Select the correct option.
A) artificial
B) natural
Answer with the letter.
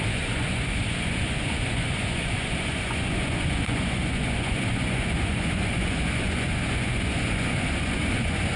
A